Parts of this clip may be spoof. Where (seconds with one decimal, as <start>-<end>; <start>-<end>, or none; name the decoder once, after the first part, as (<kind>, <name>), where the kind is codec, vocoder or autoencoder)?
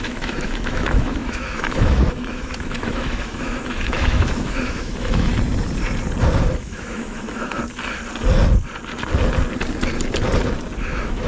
0.0-5.3 (autoencoder, DAC-VAE); 6.6-7.6; 10.8-11.3